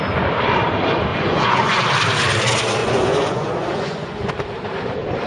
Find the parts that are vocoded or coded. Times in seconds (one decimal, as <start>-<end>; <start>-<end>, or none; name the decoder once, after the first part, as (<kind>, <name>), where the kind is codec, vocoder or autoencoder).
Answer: 1.1-1.8 (vocoder, Vocos); 2.8-4.3